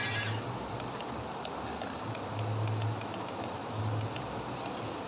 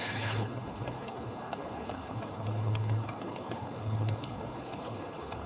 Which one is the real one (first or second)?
first